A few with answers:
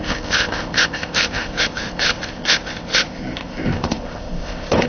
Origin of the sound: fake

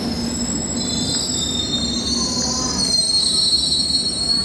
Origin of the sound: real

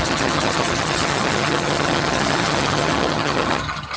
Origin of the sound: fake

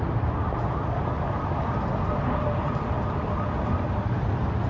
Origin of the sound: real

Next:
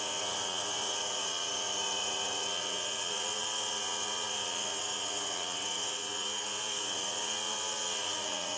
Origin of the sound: fake